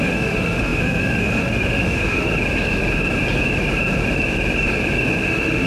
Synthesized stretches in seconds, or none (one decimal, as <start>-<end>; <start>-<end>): 0.0-2.3; 5.2-5.7